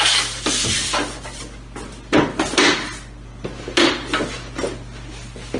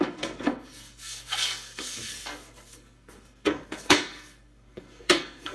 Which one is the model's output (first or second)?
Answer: second